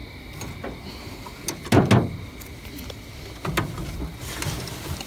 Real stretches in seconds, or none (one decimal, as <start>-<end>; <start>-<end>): 0.0-5.1